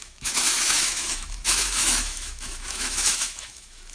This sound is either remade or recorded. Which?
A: remade